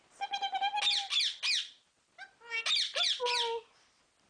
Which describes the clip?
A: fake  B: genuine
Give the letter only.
B